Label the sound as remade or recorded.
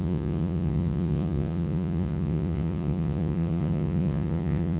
remade